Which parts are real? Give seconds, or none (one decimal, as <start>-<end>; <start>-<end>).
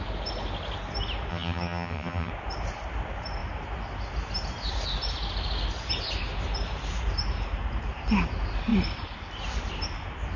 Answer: 0.0-1.3; 2.3-10.4